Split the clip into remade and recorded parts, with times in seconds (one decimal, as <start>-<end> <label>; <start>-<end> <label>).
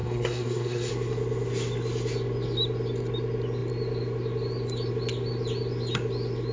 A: 0.0-0.9 remade; 0.9-6.5 recorded